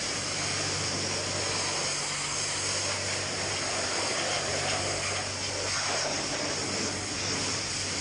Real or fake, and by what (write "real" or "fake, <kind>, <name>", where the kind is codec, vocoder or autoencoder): real